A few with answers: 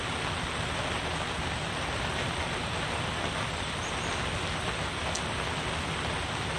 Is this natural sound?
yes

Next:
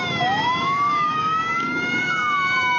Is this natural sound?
no